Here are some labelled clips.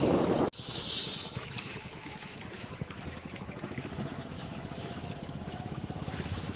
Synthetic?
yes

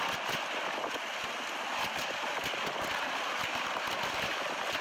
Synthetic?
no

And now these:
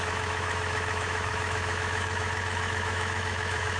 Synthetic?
yes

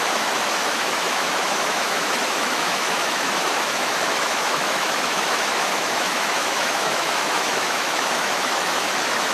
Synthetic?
yes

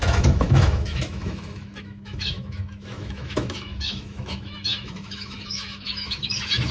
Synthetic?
yes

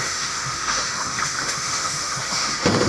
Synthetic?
yes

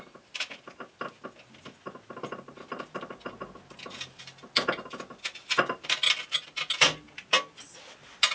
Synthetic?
no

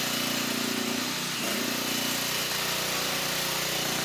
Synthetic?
no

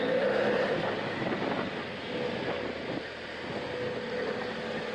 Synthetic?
no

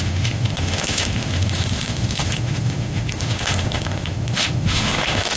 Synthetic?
yes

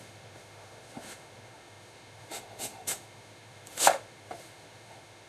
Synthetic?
yes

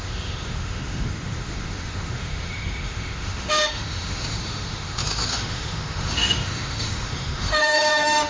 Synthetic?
yes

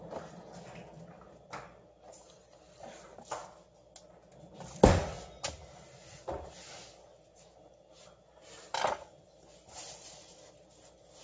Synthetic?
no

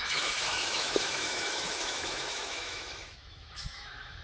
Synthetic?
yes